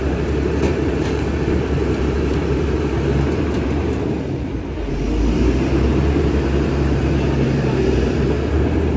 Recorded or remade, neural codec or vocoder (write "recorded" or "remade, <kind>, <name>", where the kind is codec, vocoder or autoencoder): remade, vocoder, BigVGAN v2